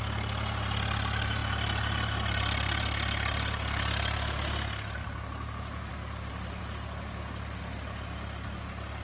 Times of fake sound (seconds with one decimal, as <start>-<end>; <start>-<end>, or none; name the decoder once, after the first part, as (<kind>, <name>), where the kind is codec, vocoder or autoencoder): none